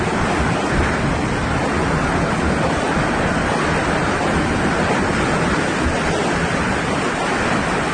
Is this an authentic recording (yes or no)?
yes